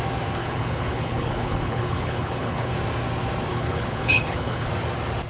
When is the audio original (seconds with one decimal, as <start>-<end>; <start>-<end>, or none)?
0.0-0.4; 2.7-3.5; 4.7-5.3